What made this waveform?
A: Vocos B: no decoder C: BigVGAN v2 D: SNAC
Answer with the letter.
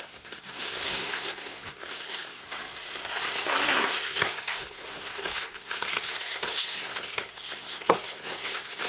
D